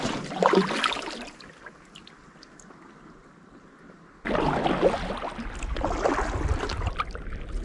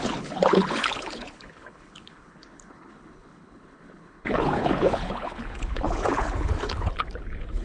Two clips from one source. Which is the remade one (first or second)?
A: second